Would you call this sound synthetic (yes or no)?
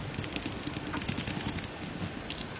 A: no